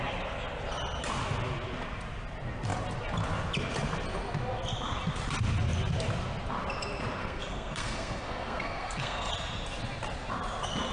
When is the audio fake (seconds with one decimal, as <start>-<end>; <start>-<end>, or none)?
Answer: 7.2-9.3

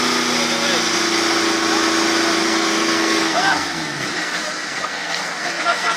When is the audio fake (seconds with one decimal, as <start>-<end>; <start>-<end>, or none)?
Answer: 2.4-6.0

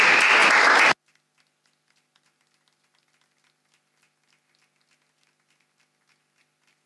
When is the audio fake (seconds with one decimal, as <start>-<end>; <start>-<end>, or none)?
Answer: none